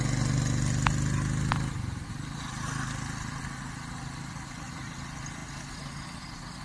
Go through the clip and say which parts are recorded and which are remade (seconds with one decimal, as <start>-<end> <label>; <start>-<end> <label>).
0.0-6.6 recorded

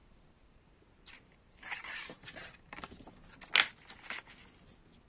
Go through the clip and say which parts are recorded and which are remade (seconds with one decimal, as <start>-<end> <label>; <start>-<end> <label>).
0.0-3.1 remade; 3.1-5.1 recorded

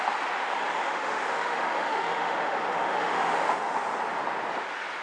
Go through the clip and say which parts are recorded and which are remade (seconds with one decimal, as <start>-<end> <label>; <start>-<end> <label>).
0.0-0.8 recorded; 0.8-3.8 remade; 3.8-5.0 recorded

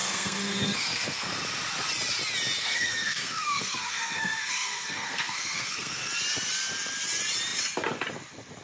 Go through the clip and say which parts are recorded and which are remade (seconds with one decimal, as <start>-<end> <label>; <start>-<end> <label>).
0.0-1.3 remade; 1.3-2.6 recorded; 2.6-6.1 remade; 6.1-8.6 recorded